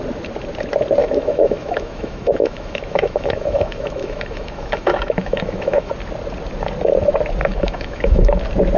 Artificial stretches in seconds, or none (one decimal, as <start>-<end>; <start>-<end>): 1.0-5.9; 7.4-8.4